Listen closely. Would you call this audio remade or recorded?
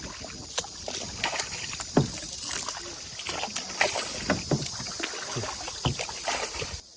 recorded